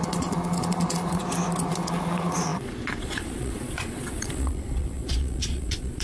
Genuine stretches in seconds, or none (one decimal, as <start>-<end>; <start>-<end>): 1.2-1.7